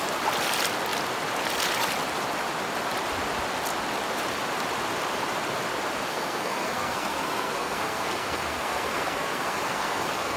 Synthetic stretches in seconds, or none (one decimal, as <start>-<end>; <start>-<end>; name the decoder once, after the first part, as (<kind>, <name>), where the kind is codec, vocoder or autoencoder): 6.1-10.4 (codec, SNAC)